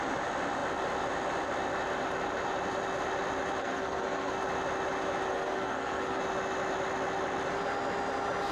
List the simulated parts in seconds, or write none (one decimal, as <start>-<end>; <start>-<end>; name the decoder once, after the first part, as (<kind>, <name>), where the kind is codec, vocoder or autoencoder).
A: 3.6-4.3 (codec, SNAC); 5.3-6.2